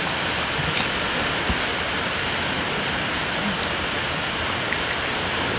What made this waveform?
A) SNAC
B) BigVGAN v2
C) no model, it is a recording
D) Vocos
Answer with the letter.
C